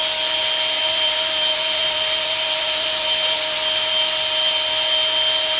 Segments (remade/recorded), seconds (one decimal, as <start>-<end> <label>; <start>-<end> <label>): 0.0-0.8 recorded; 0.8-3.9 remade; 3.9-5.6 recorded